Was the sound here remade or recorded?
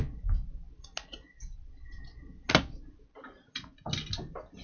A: recorded